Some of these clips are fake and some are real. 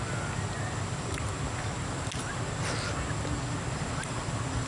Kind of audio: real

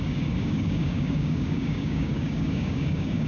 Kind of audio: fake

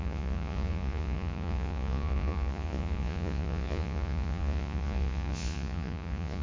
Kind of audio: fake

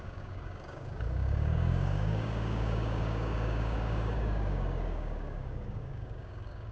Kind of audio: fake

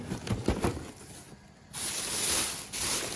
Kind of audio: real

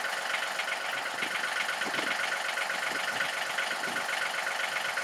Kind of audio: real